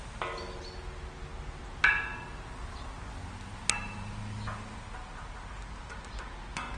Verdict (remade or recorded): recorded